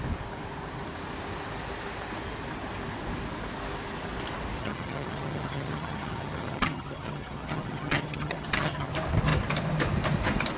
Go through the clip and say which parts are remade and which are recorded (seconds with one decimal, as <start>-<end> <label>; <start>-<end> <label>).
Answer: 0.0-4.6 recorded; 4.6-8.9 remade; 8.9-10.6 recorded